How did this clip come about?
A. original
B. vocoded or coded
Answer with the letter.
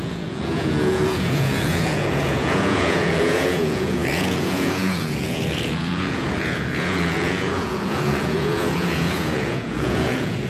B